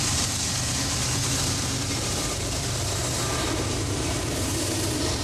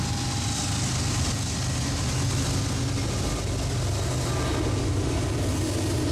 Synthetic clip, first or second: first